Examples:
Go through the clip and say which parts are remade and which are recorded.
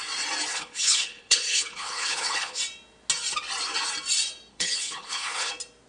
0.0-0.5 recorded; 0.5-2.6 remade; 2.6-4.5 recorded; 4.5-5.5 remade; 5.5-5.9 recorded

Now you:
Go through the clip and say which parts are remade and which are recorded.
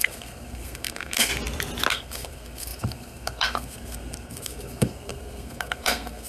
0.0-1.3 remade; 1.3-1.9 recorded; 1.9-6.3 remade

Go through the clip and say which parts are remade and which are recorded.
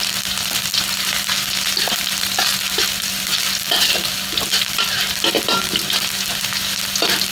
0.0-7.3 recorded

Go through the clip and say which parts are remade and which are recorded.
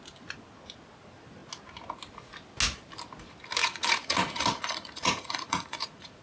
0.0-3.6 recorded; 3.6-6.2 remade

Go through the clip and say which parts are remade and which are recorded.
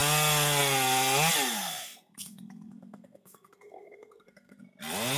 0.0-1.6 recorded; 1.6-4.6 remade; 4.6-5.2 recorded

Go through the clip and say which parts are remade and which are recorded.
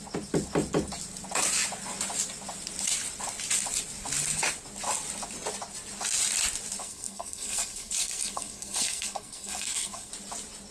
0.0-6.8 recorded; 6.8-10.1 remade; 10.1-10.7 recorded